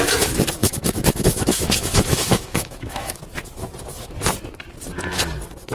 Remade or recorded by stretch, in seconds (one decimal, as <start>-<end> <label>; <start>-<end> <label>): 0.0-0.6 recorded; 0.6-3.2 remade; 3.2-5.7 recorded